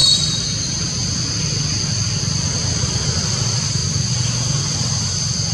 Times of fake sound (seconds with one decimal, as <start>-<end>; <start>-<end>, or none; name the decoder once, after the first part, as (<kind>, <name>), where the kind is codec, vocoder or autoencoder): 2.2-3.8 (vocoder, BigVGAN v2); 5.0-5.5